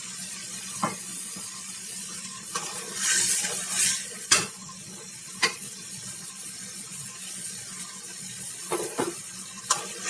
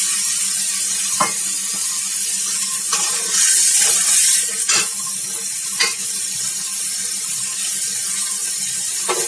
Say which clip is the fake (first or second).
first